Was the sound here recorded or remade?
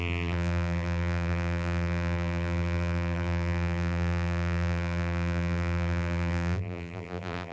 remade